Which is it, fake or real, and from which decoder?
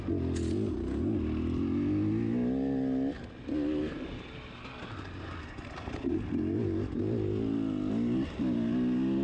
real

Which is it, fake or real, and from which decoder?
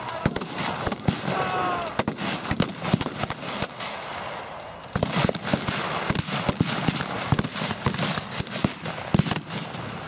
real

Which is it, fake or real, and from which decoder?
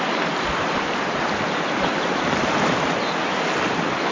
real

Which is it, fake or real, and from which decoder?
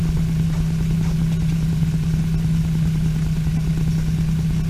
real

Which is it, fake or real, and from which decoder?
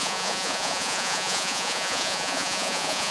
fake, vocoder, Vocos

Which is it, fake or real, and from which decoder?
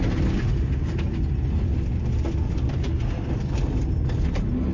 real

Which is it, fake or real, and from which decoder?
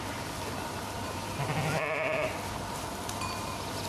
real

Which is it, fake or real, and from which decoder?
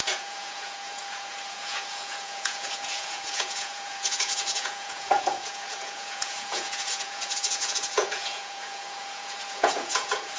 fake, vocoder, Vocos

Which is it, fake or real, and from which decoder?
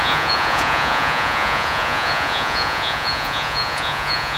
fake, vocoder, Vocos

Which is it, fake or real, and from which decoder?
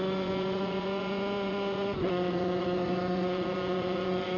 fake, vocoder, Vocos